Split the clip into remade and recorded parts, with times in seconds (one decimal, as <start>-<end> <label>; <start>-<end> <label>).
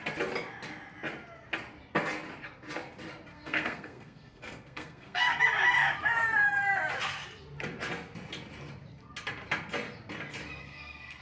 0.0-3.3 recorded; 3.3-5.4 remade; 5.4-10.6 recorded; 10.6-11.2 remade